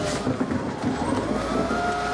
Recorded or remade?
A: recorded